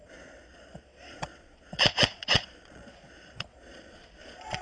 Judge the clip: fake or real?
fake